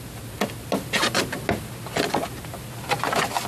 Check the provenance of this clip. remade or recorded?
recorded